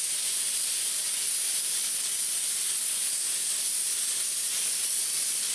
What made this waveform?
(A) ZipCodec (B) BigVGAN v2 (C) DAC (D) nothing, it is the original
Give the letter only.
D